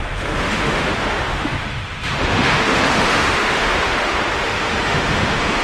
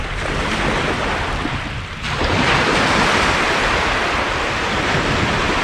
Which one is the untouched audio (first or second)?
second